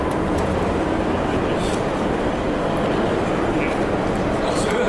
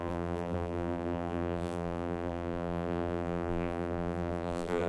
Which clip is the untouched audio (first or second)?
first